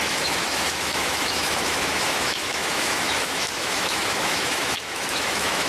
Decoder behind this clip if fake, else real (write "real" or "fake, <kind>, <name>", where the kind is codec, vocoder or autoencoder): fake, autoencoder, DAC-VAE